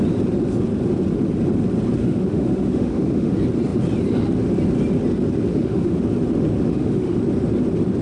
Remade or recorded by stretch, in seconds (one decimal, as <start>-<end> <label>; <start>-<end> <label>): 0.0-2.0 recorded; 2.0-3.3 remade; 3.3-5.5 recorded; 5.5-6.0 remade; 6.0-6.7 recorded; 6.7-7.2 remade; 7.2-8.0 recorded